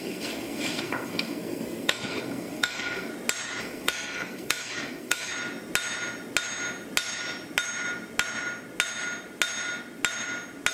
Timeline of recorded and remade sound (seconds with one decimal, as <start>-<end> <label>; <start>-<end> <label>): 0.0-3.1 remade; 3.1-3.6 recorded; 3.6-5.3 remade; 5.3-10.7 recorded